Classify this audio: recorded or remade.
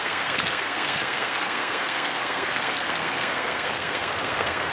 remade